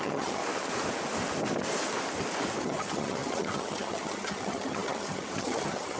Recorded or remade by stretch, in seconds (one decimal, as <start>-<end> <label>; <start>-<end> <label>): 0.0-0.4 remade; 0.4-2.6 recorded; 2.6-6.0 remade